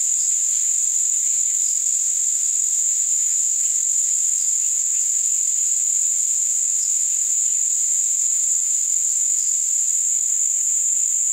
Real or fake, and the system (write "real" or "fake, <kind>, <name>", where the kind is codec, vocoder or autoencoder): fake, autoencoder, DAC-VAE